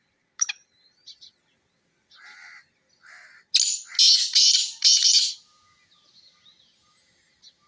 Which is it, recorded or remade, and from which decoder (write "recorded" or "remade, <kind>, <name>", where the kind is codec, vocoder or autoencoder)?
recorded